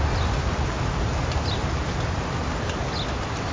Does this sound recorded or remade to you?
recorded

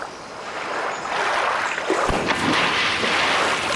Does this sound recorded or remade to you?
recorded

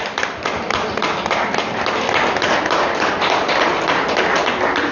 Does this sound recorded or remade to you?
recorded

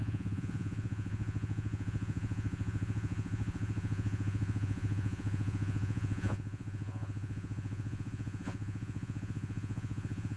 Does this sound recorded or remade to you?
remade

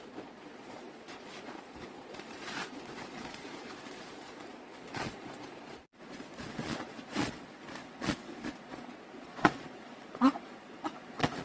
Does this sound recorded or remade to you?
remade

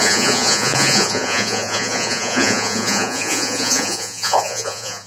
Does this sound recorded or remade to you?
remade